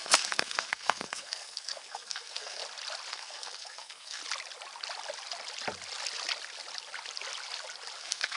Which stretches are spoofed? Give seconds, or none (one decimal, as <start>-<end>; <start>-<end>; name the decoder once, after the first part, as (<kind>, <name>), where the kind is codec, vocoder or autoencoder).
0.0-2.6 (codec, SNAC); 3.1-4.2; 8.0-8.4